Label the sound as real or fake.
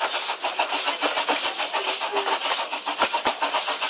real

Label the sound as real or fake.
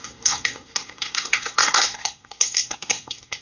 fake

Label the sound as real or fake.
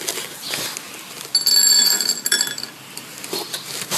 real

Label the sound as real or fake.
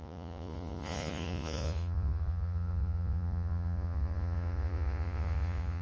fake